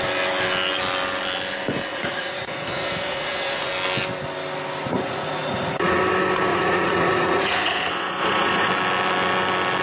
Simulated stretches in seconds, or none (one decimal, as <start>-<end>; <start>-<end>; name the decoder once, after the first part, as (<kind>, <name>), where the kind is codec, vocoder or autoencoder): 1.9-3.7 (vocoder, Vocos); 4.8-6.0; 6.5-8.7